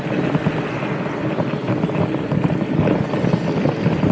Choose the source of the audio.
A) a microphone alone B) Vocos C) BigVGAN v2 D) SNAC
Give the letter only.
A